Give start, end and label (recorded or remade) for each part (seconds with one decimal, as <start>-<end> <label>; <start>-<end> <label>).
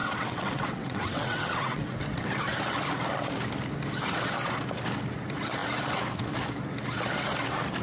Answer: 0.0-2.0 remade; 2.0-7.8 recorded